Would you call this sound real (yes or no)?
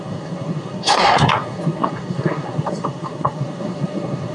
no